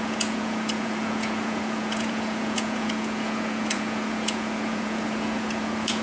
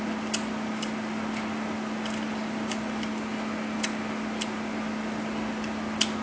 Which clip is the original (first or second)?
second